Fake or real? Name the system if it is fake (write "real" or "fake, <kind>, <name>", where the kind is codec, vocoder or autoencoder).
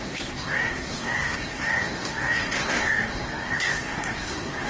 fake, codec, SNAC